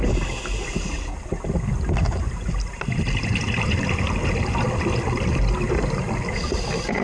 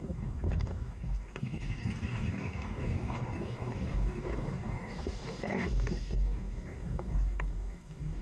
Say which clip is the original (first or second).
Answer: first